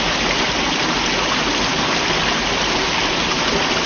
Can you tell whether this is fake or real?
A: real